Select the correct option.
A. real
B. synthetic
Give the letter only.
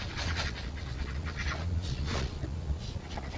B